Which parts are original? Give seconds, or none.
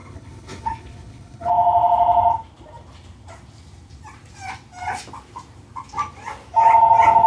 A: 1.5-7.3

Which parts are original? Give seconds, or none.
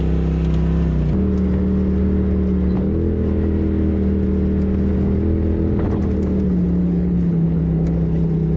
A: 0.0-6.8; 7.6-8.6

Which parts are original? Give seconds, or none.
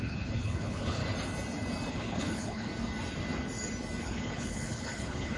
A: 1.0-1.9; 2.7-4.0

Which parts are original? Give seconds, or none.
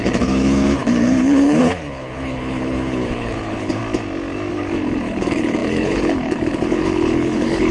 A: 3.8-4.5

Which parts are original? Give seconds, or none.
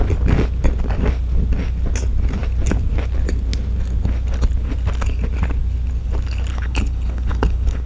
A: 0.0-6.5